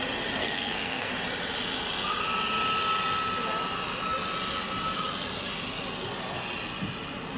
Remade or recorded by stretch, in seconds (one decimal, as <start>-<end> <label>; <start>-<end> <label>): 0.0-0.4 recorded; 0.4-1.1 remade; 1.1-7.4 recorded